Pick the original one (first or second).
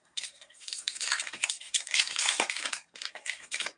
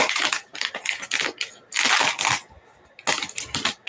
second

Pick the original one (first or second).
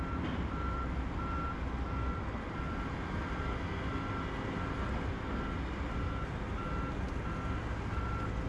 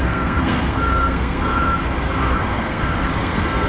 first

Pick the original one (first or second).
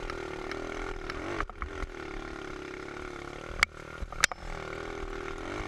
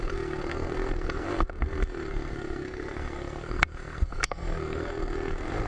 first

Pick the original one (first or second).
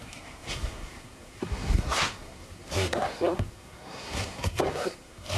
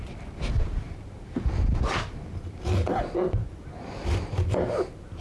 second